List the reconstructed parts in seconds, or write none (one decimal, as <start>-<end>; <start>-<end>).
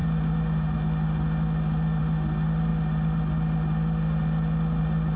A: none